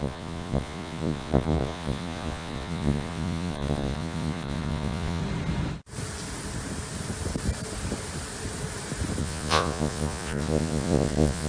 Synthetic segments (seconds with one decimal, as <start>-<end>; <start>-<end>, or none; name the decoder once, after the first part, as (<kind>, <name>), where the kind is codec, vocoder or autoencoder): 0.0-5.2 (vocoder, Vocos); 9.2-11.5